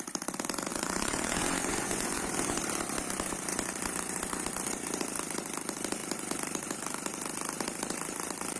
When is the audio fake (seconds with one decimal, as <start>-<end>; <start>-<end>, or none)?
0.7-2.6